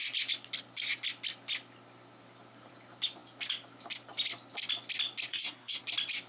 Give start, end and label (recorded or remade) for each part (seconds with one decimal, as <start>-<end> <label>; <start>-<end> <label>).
0.0-5.3 recorded; 5.3-5.8 remade; 5.8-6.3 recorded